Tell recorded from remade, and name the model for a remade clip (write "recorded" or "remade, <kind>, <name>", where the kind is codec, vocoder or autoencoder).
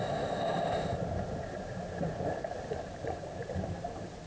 recorded